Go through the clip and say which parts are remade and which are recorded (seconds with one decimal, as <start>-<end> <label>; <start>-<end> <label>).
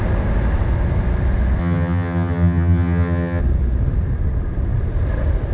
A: 0.0-1.6 recorded; 1.6-3.4 remade; 3.4-5.5 recorded